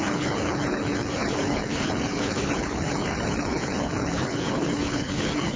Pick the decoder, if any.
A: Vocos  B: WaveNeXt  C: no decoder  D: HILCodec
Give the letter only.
D